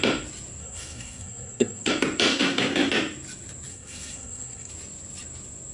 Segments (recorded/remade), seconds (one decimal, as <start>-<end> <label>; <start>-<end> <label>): 0.0-0.6 recorded; 0.6-1.9 remade; 1.9-2.3 recorded; 2.3-2.9 remade; 2.9-3.7 recorded; 3.7-4.7 remade; 4.7-5.7 recorded

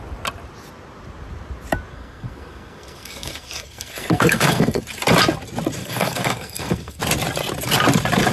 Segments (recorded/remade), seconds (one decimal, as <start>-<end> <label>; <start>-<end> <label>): 0.0-1.9 recorded; 1.9-4.8 remade; 4.8-5.8 recorded; 5.8-7.0 remade; 7.0-8.3 recorded